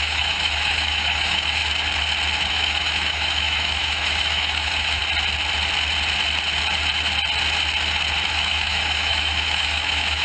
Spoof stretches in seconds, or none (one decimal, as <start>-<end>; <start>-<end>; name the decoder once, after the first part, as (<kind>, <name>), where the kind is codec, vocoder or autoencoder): 0.0-1.6 (autoencoder, DAC-VAE); 2.5-5.0; 8.3-10.2